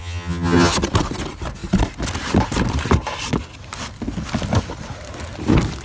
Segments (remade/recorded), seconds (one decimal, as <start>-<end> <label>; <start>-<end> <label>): 0.0-0.7 remade; 0.7-5.8 recorded